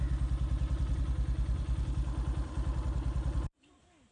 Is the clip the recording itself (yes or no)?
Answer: yes